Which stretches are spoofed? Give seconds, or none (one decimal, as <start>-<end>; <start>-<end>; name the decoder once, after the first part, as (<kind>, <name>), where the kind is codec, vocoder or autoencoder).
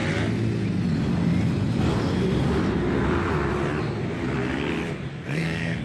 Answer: 5.1-5.8 (codec, SNAC)